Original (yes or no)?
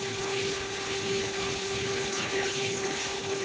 no